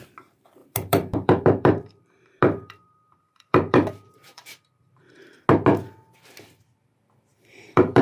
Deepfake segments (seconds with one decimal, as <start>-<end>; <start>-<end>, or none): 0.6-5.4; 7.3-8.0